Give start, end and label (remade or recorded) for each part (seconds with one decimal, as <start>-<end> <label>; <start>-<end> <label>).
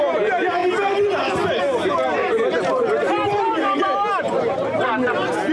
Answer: 0.0-0.6 recorded; 0.6-1.6 remade; 1.6-2.2 recorded; 2.2-4.8 remade; 4.8-5.5 recorded